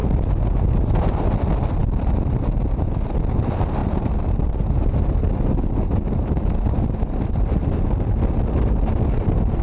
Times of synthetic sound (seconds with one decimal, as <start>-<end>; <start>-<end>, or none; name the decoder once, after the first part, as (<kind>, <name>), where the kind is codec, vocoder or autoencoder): 1.8-3.3 (vocoder, BigVGAN v2); 3.8-5.5; 6.2-9.6